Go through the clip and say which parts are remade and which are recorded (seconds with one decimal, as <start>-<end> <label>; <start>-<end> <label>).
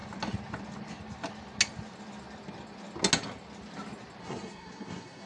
0.0-4.2 recorded; 4.2-5.3 remade